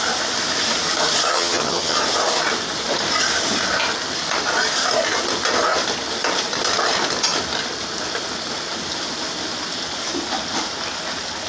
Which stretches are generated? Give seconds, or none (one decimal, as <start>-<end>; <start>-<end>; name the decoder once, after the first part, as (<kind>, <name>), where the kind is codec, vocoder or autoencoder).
1.3-2.0 (vocoder, HiFi-GAN)